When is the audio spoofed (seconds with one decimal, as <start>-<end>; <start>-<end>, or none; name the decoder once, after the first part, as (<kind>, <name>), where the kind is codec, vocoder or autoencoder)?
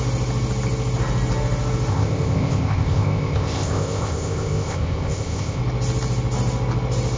1.9-5.6 (codec, ZipCodec)